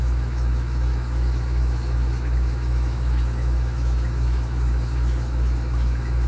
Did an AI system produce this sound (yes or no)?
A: yes